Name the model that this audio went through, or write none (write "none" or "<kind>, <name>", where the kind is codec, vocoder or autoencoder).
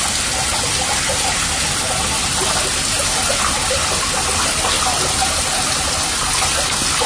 none